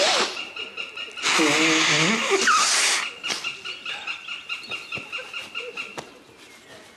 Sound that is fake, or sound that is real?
real